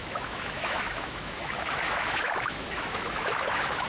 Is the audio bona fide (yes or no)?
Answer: no